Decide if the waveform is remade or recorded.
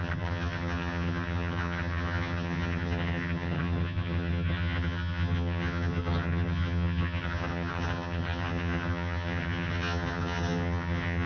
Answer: remade